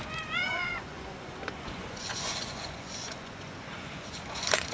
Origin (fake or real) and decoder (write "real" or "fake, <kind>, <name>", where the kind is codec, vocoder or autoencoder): fake, vocoder, Vocos